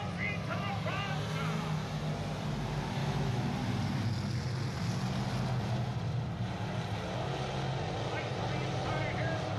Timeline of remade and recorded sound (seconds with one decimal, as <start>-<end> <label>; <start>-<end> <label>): 0.0-3.0 recorded; 3.0-3.5 remade; 3.5-9.6 recorded